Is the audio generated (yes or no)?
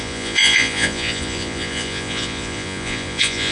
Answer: yes